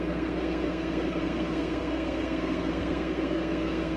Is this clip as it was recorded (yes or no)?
no